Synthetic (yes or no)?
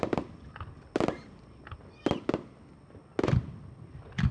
no